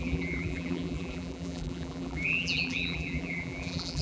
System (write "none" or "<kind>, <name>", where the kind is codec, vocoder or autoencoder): vocoder, BigVGAN v2